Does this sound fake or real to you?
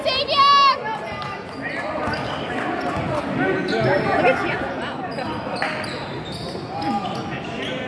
real